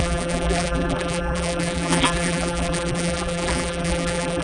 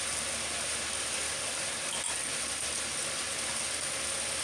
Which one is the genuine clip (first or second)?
second